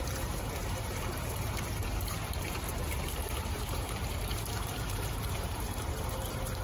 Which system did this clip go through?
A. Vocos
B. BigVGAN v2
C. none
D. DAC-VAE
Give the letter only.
B